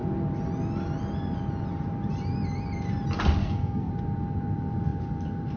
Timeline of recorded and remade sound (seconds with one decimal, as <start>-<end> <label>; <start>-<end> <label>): 0.0-3.4 recorded; 3.4-3.9 remade; 3.9-5.6 recorded

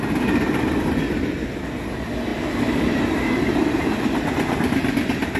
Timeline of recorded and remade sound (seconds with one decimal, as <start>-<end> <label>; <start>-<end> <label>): 0.0-5.4 recorded